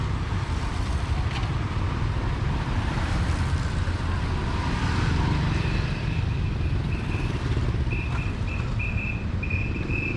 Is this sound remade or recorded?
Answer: remade